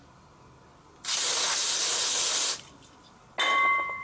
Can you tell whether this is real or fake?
real